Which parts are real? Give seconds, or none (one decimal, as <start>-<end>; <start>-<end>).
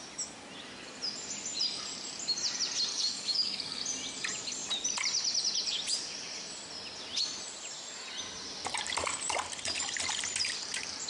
0.0-2.9; 3.8-11.1